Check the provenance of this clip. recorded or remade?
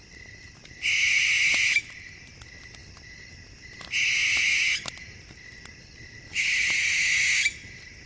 recorded